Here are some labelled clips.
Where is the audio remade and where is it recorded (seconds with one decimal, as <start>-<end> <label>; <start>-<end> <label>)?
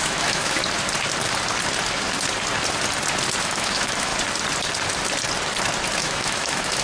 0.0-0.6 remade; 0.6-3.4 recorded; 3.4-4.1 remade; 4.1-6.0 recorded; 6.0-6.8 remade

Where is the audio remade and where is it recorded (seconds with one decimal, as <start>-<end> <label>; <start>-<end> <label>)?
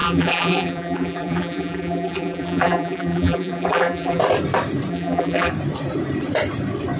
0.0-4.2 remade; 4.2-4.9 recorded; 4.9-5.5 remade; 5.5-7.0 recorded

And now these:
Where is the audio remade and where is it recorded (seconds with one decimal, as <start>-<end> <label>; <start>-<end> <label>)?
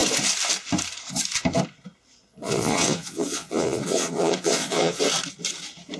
0.0-2.3 recorded; 2.3-5.0 remade; 5.0-6.0 recorded